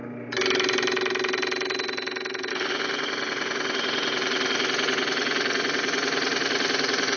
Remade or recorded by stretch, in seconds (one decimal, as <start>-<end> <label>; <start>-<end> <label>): 0.0-7.2 recorded